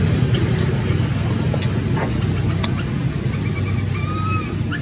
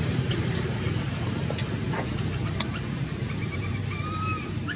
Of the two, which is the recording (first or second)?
first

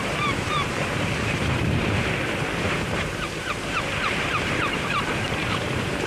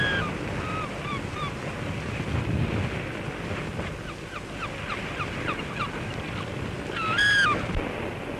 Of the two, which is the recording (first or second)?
second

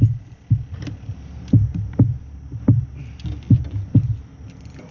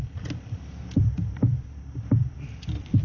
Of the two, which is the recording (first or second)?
first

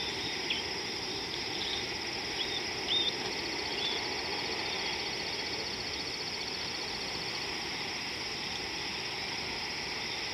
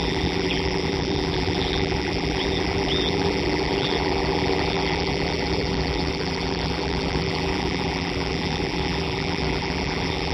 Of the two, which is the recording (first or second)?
first